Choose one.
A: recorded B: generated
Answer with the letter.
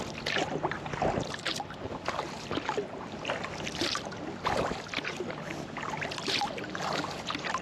A